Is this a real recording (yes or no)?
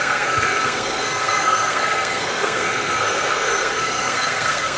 no